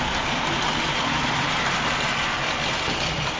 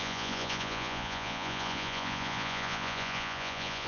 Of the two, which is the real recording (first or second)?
first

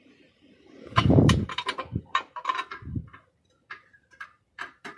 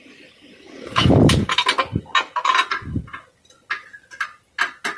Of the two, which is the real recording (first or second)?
second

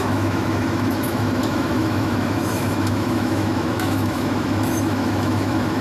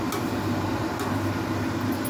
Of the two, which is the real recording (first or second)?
second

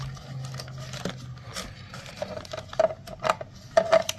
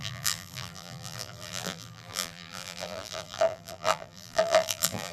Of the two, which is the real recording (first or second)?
first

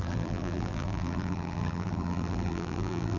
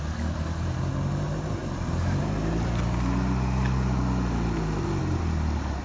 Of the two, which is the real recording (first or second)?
second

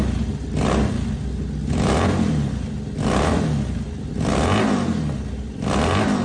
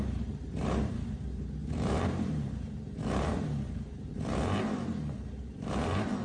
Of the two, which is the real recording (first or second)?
first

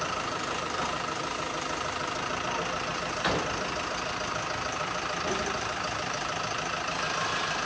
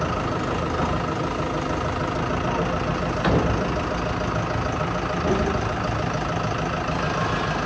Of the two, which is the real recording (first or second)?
second